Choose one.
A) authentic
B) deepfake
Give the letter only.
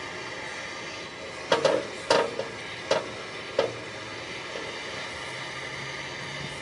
A